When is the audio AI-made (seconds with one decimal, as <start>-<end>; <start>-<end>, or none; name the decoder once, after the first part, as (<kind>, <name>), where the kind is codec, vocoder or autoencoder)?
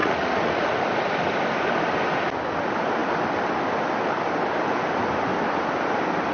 0.0-0.8 (vocoder, Vocos)